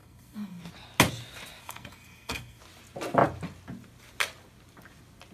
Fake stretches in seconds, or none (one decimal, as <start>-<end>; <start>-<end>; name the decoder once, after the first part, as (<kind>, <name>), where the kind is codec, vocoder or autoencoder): 0.0-0.6 (codec, SNAC); 1.6-2.6